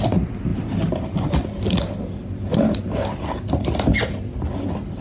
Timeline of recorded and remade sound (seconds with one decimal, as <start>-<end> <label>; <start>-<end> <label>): 0.0-5.0 recorded

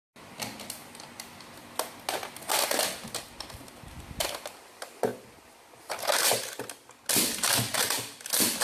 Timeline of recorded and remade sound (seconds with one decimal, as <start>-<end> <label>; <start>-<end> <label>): 0.0-8.6 recorded

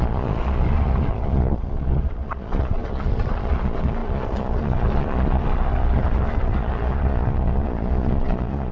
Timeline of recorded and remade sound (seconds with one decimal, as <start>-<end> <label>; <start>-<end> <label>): 0.0-8.7 remade

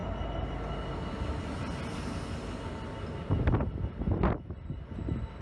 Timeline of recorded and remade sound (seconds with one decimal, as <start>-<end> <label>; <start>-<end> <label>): 0.0-5.4 recorded

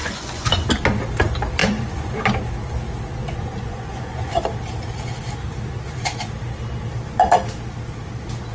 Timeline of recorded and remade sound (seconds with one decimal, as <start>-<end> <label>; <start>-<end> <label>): 0.0-0.7 remade; 0.7-1.6 recorded; 1.6-2.2 remade; 2.2-3.2 recorded; 3.2-4.3 remade; 4.3-8.5 recorded

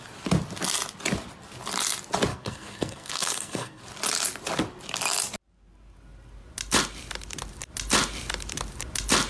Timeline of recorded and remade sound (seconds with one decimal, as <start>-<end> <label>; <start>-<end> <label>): 0.0-2.3 recorded; 2.3-3.8 remade; 3.8-9.3 recorded